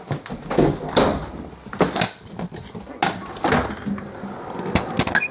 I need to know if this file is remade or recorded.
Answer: recorded